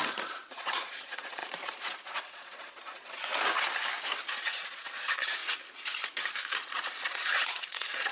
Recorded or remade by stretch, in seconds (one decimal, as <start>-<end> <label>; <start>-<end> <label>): 0.0-3.3 remade; 3.3-4.4 recorded; 4.4-5.4 remade; 5.4-6.6 recorded; 6.6-8.1 remade